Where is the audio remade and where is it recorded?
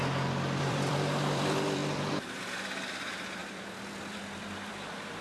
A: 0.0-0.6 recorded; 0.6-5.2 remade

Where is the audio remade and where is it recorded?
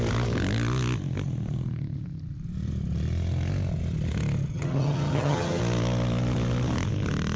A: 0.0-4.5 recorded; 4.5-5.6 remade; 5.6-7.4 recorded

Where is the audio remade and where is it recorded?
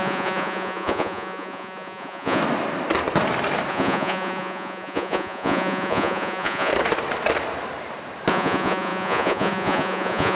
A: 0.0-2.4 remade; 2.4-3.7 recorded; 3.7-6.7 remade; 6.7-8.3 recorded; 8.3-10.3 remade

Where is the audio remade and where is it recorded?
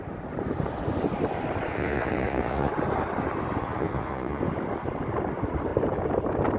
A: 0.0-1.7 recorded; 1.7-2.7 remade; 2.7-3.6 recorded; 3.6-4.4 remade; 4.4-6.6 recorded